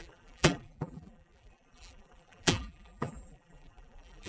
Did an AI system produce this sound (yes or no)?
yes